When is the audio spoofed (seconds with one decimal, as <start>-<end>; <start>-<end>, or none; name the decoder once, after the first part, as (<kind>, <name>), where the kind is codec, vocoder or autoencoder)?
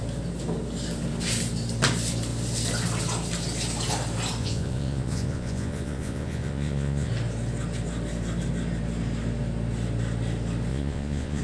4.4-7.1 (vocoder, Vocos); 10.7-11.4